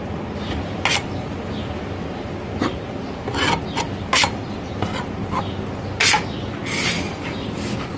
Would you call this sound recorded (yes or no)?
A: yes